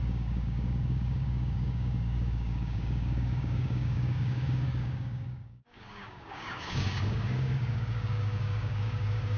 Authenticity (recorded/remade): remade